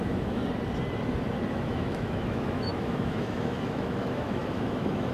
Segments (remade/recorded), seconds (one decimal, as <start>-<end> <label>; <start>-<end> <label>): 0.0-0.4 remade; 0.4-1.5 recorded; 1.5-5.1 remade